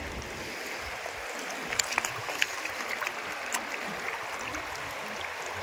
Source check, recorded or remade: recorded